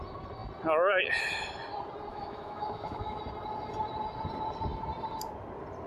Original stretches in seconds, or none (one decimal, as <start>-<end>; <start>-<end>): 0.0-2.1; 3.2-5.9